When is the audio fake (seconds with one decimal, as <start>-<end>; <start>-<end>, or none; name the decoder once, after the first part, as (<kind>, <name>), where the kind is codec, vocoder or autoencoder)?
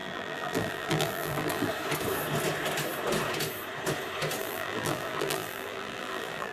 0.0-1.7 (vocoder, BigVGAN v2); 4.4-6.5